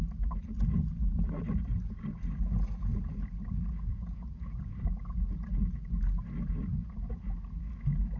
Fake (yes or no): no